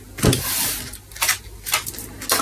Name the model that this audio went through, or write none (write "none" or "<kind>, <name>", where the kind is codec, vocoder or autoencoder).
none